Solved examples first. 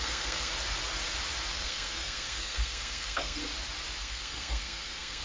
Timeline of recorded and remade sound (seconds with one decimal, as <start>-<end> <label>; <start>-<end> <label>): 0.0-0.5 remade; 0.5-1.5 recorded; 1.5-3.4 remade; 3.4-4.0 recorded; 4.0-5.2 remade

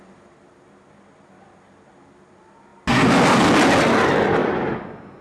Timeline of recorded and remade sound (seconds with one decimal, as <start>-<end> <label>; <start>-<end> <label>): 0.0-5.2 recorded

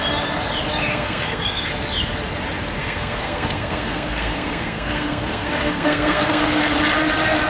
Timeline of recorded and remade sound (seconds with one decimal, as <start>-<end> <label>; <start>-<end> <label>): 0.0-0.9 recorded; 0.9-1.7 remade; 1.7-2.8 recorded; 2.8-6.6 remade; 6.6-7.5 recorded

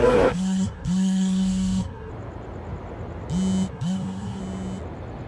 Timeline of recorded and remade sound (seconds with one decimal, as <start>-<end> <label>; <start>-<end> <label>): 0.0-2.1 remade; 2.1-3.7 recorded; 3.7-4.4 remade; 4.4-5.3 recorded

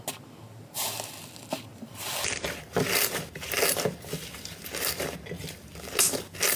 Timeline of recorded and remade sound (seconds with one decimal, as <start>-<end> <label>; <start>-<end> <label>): 0.0-6.6 recorded

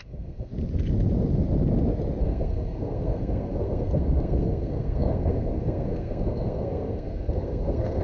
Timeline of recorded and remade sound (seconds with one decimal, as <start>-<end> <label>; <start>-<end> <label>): 0.0-0.5 remade; 0.5-2.2 recorded; 2.2-8.0 remade

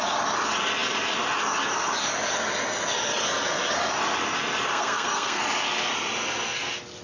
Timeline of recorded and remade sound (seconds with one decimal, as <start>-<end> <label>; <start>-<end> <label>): 0.0-4.7 recorded; 4.7-5.4 remade; 5.4-7.0 recorded